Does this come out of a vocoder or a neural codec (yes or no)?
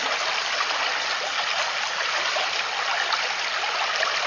no